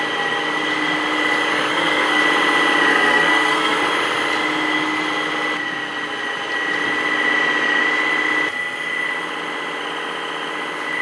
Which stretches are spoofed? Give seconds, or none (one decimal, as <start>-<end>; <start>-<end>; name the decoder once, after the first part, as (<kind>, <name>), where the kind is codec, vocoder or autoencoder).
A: 1.5-2.2 (codec, SNAC); 2.9-3.8